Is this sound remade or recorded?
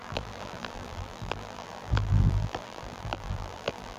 remade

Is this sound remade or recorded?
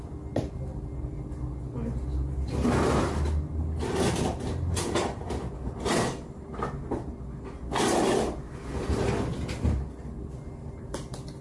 recorded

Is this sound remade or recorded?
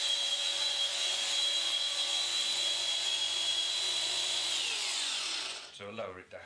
remade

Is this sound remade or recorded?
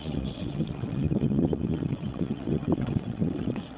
remade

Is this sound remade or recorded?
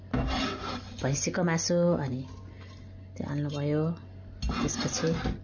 recorded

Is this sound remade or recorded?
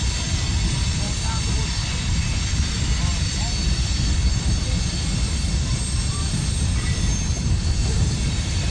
recorded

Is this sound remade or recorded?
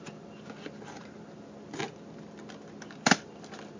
recorded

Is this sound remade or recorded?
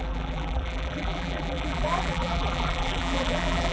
remade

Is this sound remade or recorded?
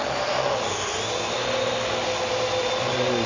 recorded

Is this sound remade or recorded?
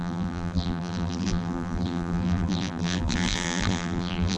remade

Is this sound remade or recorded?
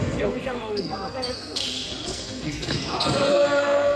remade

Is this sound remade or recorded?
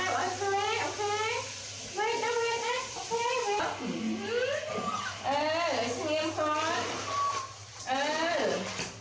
recorded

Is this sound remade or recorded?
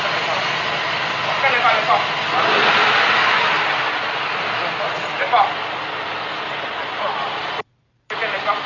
recorded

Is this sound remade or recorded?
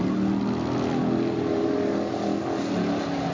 recorded